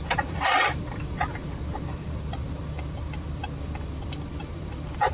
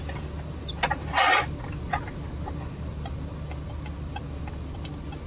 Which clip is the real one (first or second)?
second